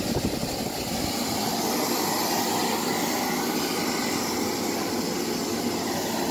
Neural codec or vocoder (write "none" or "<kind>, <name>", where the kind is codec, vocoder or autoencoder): none